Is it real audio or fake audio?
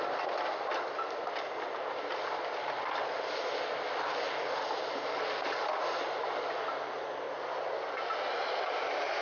real